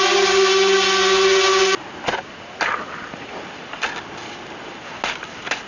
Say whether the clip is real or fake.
real